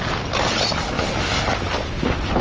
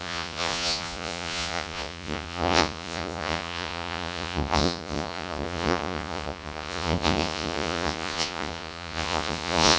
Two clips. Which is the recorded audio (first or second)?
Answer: first